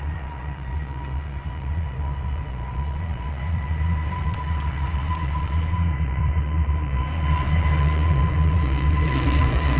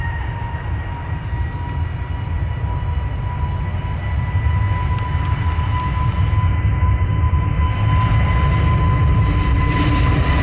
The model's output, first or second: first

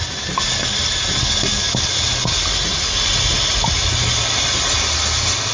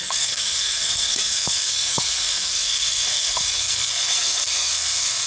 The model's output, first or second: second